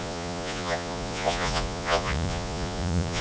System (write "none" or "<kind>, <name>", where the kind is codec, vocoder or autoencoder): vocoder, Vocos